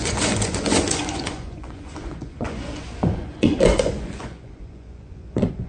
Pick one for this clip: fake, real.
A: fake